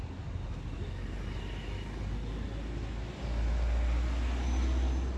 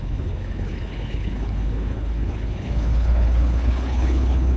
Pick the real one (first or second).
first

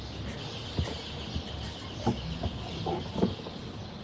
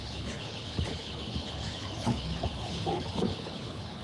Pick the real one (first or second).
first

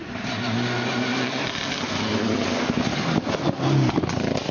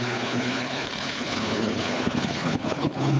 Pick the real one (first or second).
first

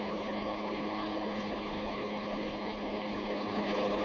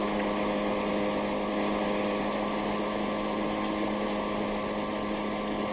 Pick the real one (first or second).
second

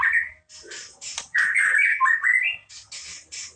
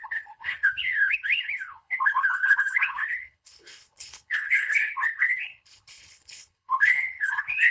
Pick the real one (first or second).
first